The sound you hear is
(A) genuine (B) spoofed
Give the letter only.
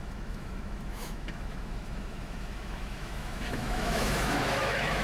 B